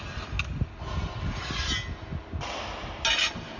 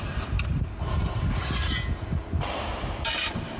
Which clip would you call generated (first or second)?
second